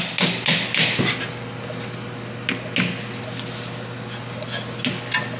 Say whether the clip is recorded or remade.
recorded